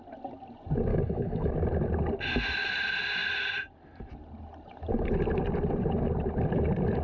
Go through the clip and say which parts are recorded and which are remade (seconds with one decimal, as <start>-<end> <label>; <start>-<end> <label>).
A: 0.0-0.9 recorded; 0.9-1.5 remade; 1.5-7.0 recorded

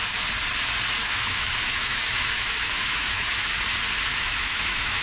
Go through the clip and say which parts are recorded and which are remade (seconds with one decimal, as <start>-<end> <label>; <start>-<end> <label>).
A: 0.0-1.0 recorded; 1.0-3.5 remade; 3.5-4.1 recorded; 4.1-5.0 remade

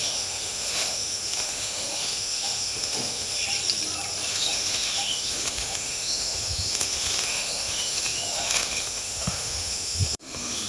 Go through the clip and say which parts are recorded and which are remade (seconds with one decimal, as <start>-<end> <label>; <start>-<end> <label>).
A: 0.0-3.4 remade; 3.4-4.3 recorded; 4.3-10.7 remade

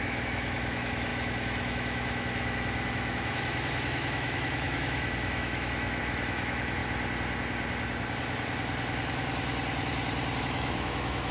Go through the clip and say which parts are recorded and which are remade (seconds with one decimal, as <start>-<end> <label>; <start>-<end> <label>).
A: 0.0-6.8 remade; 6.8-10.4 recorded; 10.4-11.3 remade

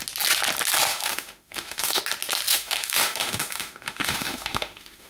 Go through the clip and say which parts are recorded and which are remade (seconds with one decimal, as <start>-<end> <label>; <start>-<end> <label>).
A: 0.0-0.9 recorded; 0.9-2.0 remade; 2.0-2.5 recorded; 2.5-5.1 remade

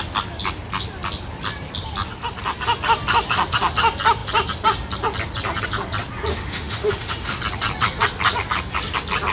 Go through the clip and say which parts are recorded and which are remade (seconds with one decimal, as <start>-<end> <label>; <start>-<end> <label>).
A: 0.0-6.3 recorded; 6.3-7.4 remade; 7.4-9.3 recorded